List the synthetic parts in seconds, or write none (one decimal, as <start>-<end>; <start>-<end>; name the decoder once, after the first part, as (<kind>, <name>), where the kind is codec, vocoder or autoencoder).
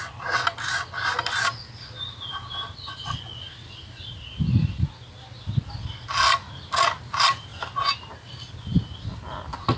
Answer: none